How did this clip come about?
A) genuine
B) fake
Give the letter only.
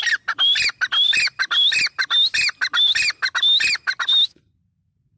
A